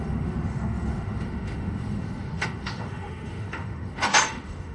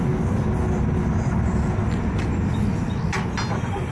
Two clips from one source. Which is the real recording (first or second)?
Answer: second